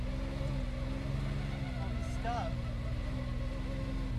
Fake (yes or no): no